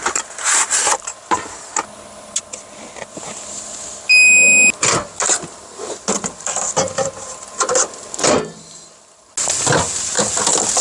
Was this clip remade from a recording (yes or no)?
no